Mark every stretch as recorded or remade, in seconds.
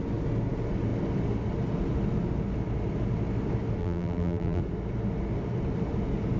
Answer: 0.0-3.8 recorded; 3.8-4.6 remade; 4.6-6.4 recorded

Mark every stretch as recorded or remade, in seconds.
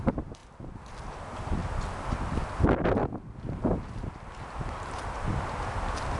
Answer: 0.0-6.2 recorded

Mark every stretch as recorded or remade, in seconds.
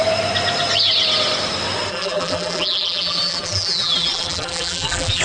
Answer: 0.0-1.9 recorded; 1.9-5.2 remade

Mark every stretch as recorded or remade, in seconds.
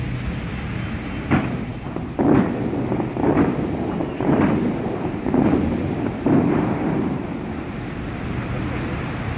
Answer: 0.0-4.0 recorded; 4.0-8.6 remade; 8.6-9.4 recorded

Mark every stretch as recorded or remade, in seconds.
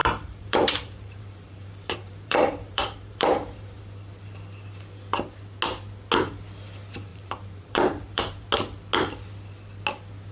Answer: 0.0-3.8 remade; 3.8-7.1 recorded; 7.1-8.5 remade; 8.5-10.3 recorded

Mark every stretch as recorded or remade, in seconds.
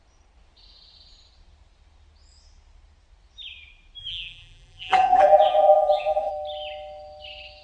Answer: 0.0-4.0 recorded; 4.0-6.3 remade; 6.3-7.6 recorded